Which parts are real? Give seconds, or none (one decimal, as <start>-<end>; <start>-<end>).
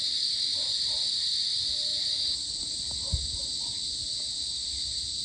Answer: 0.0-5.2